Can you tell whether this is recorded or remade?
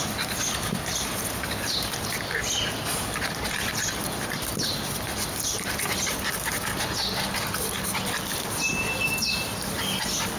recorded